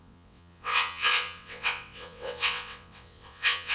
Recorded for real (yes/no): no